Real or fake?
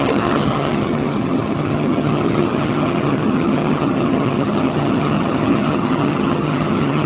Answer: fake